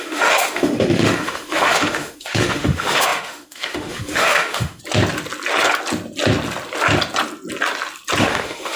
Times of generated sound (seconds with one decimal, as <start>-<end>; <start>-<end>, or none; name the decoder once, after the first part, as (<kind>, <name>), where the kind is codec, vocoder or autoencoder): 0.0-4.8 (autoencoder, DAC-VAE); 8.2-8.8